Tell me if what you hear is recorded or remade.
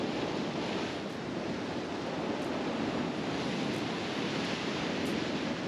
recorded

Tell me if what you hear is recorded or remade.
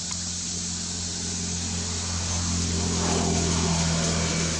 recorded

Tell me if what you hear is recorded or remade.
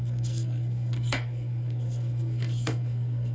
remade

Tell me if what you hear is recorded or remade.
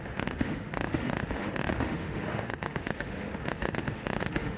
remade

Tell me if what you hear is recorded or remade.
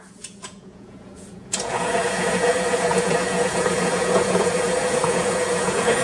remade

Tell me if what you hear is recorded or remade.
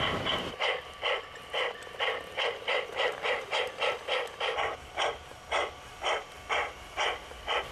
recorded